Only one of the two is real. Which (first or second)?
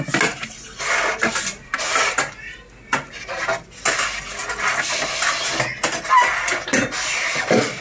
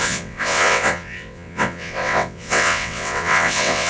first